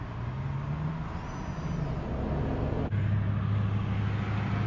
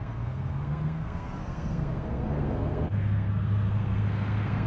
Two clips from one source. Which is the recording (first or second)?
first